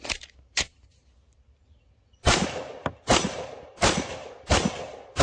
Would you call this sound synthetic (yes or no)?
no